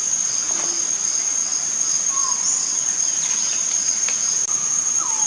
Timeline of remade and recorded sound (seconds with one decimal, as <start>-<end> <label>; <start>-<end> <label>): 0.0-5.3 recorded